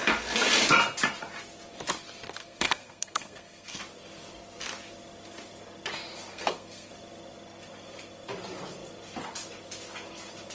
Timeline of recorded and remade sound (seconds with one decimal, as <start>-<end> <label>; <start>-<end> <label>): 0.0-2.4 recorded; 2.4-3.8 remade; 3.8-6.3 recorded; 6.3-6.9 remade; 6.9-10.5 recorded